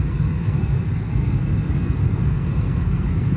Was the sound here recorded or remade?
remade